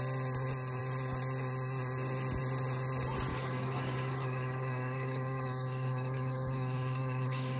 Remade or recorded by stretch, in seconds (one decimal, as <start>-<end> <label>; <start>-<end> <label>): 0.0-3.3 recorded; 3.3-7.6 remade